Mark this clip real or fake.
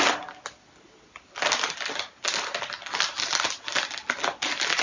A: real